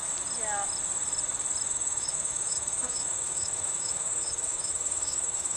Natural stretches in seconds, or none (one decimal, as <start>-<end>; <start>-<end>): 0.0-1.7